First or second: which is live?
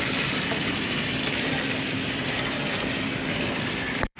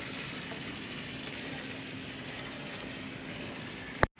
second